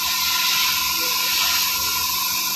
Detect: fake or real real